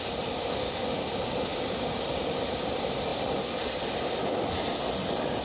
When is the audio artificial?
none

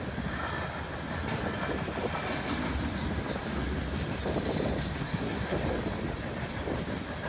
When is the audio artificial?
5.0-5.6 (codec, SNAC)

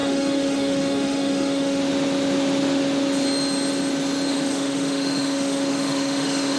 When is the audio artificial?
0.0-1.8 (autoencoder, DAC-VAE); 4.3-6.6

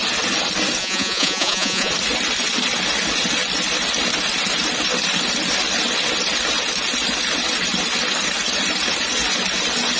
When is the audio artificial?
0.8-1.9 (vocoder, Vocos)

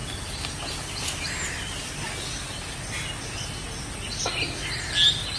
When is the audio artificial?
none